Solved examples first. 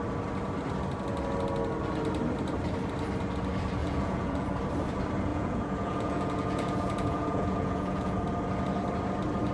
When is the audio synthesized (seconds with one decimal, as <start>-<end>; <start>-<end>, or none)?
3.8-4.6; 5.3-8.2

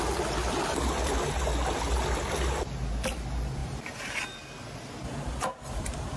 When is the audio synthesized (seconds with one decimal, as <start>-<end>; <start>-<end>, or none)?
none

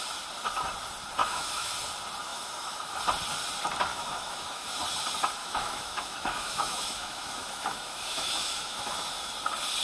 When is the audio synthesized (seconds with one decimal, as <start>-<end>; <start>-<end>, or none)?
1.2-1.7; 2.3-3.0; 3.9-4.8; 5.4-9.3